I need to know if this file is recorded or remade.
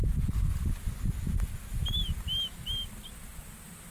recorded